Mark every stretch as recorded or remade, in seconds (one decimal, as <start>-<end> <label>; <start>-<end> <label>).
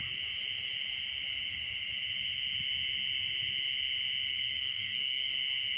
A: 0.0-4.3 recorded; 4.3-5.3 remade; 5.3-5.8 recorded